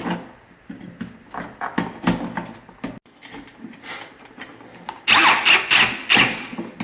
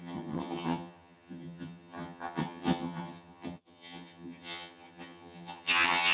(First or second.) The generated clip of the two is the second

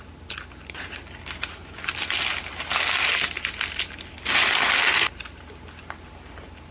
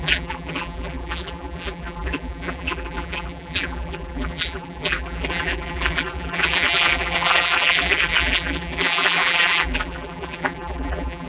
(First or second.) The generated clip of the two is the second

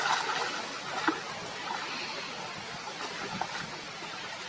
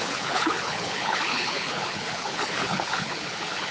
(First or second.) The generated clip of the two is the second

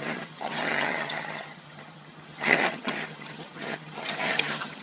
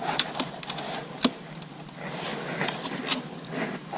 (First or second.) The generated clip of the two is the first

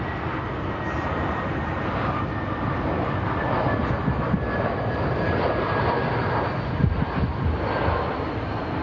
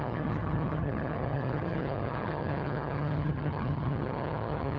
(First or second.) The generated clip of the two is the second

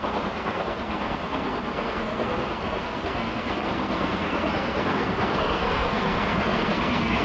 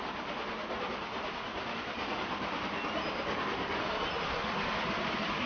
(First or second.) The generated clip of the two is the first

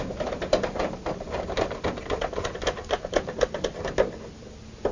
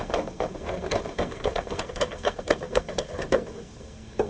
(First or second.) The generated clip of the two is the second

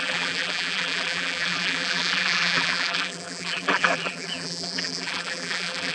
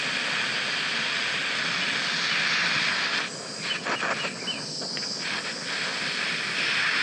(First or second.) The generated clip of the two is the first